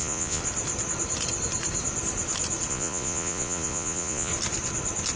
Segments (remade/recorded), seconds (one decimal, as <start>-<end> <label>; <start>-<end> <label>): 0.0-0.4 remade; 0.4-2.7 recorded; 2.7-4.3 remade; 4.3-5.2 recorded